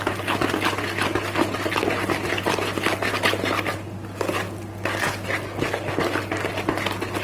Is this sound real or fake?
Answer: real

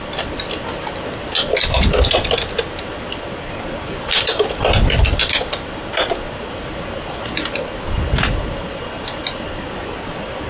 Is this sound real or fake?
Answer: real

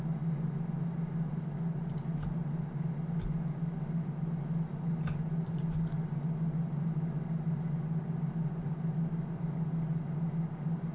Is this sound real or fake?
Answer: real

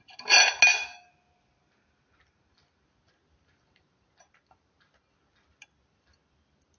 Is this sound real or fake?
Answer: real